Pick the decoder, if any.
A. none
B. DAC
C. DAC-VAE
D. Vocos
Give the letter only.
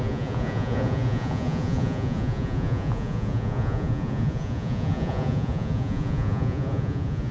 D